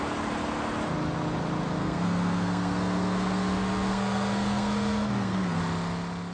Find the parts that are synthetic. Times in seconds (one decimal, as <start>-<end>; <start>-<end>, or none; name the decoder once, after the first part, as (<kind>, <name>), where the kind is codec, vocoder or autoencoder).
1.8-5.6 (codec, SNAC)